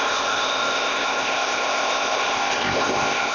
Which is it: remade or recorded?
remade